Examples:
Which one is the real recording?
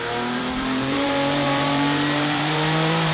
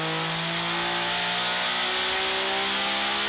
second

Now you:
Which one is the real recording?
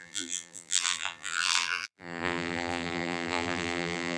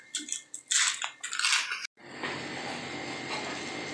second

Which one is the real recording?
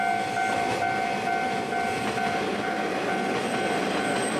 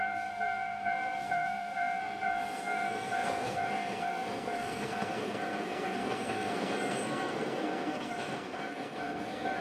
first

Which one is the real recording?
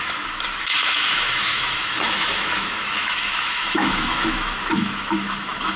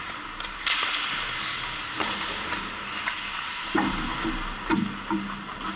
second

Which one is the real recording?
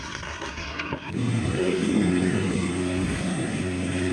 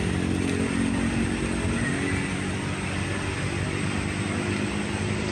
second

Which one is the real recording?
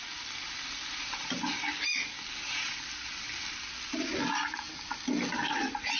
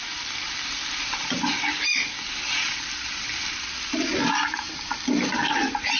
first